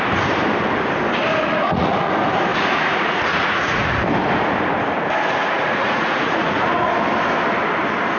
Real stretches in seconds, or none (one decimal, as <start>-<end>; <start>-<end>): 0.0-1.3; 2.1-2.5; 3.9-5.4; 6.9-8.2

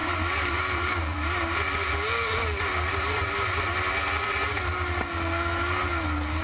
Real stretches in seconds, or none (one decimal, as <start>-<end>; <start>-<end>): 1.6-2.9; 3.7-6.4